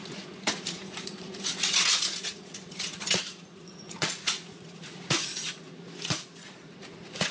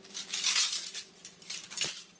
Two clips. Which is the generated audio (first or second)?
first